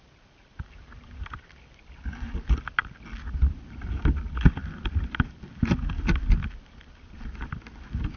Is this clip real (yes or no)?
yes